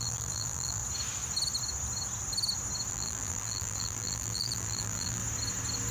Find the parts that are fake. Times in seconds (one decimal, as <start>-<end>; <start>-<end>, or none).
0.0-0.8; 2.9-5.2